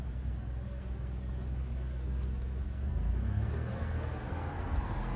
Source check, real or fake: fake